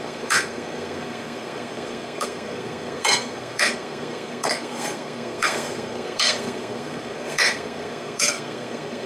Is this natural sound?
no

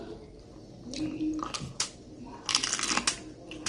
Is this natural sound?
yes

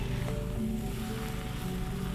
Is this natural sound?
yes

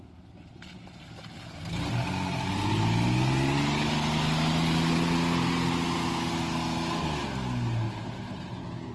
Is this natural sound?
yes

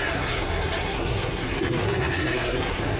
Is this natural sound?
no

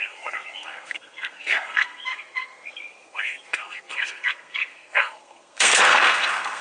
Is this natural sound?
no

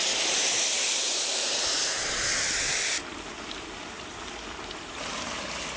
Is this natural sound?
yes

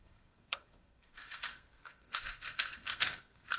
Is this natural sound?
no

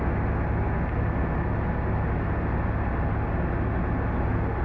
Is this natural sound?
yes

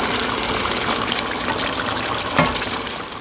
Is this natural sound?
yes